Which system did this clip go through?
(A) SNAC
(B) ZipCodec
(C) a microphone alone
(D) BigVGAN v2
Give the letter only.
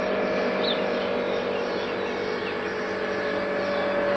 C